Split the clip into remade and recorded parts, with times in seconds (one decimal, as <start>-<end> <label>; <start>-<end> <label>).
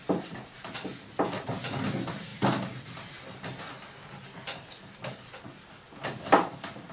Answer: 0.0-6.9 recorded